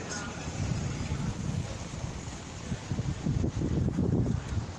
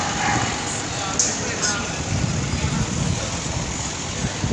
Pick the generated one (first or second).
first